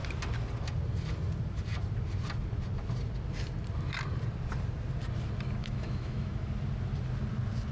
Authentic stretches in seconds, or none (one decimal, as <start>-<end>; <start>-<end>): 0.0-5.6; 6.5-7.7